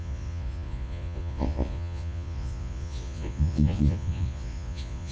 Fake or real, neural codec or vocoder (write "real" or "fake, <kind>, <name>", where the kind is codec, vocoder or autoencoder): fake, vocoder, Vocos